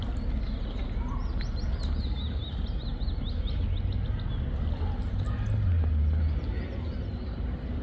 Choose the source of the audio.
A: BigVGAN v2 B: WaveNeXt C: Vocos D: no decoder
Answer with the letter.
D